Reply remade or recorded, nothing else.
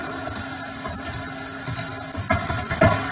recorded